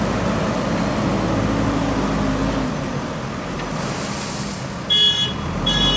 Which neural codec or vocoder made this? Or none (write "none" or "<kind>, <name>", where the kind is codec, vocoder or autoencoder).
none